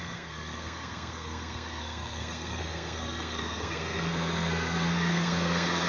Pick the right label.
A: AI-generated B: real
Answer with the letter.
A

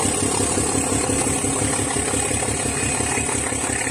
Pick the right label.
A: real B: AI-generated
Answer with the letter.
A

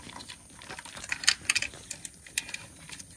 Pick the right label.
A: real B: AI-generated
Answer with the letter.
A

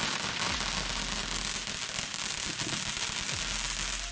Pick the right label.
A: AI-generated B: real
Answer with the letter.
B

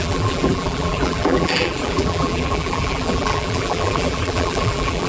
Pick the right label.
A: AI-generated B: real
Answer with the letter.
A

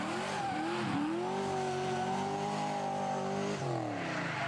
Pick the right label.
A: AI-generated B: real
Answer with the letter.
B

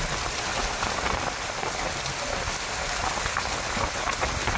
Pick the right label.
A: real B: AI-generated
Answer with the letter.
A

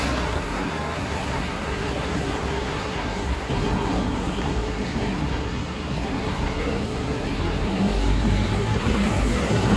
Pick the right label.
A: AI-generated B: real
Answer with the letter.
A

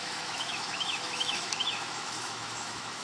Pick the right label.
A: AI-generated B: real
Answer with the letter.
A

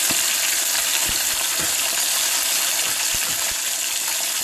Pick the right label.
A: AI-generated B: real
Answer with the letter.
A